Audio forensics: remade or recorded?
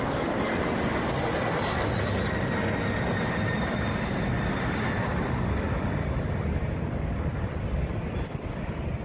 recorded